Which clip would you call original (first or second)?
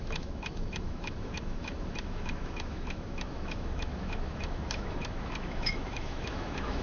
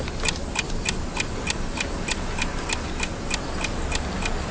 second